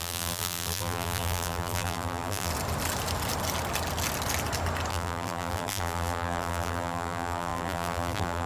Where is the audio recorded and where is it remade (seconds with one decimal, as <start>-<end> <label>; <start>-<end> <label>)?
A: 0.0-2.5 remade; 2.5-4.9 recorded; 4.9-8.5 remade